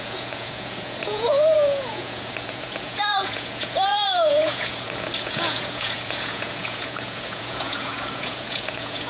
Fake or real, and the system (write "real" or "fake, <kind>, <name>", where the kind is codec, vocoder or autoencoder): fake, vocoder, Vocos